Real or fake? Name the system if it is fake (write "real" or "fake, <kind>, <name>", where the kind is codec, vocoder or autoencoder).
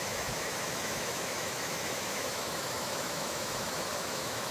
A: fake, autoencoder, DAC-VAE